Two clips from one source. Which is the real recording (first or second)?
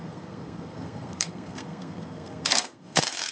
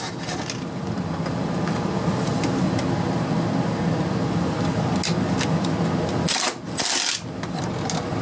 second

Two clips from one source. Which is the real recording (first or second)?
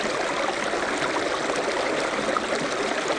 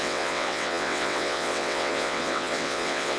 first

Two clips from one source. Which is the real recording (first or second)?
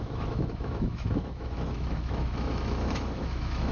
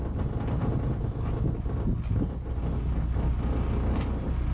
second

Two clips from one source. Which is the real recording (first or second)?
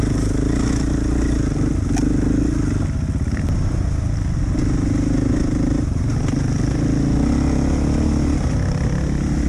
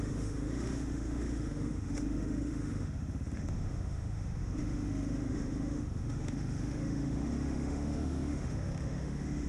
first